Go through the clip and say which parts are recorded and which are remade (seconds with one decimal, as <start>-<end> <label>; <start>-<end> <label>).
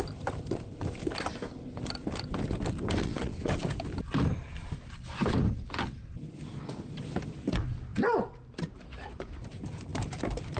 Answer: 0.0-3.0 recorded; 3.0-3.5 remade; 3.5-10.6 recorded